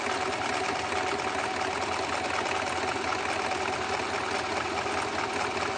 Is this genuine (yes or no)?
yes